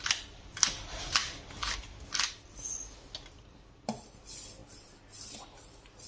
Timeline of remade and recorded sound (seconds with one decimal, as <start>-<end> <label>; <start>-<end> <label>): 0.0-6.1 recorded

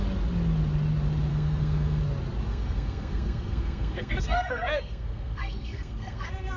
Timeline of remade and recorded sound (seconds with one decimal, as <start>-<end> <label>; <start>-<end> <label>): 0.0-1.3 recorded; 1.3-2.0 remade; 2.0-2.5 recorded; 2.5-6.6 remade

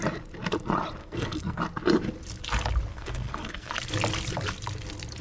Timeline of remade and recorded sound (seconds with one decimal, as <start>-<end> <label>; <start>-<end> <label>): 0.0-1.0 recorded; 1.0-1.6 remade; 1.6-2.9 recorded; 2.9-3.7 remade; 3.7-5.2 recorded